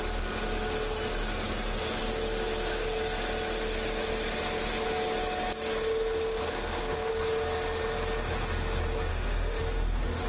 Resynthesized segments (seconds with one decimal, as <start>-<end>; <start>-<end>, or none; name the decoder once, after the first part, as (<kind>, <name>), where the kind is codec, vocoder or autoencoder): 9.1-9.6 (autoencoder, DAC-VAE)